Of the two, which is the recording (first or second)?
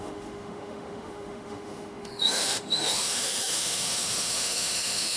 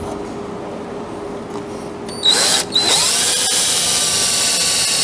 second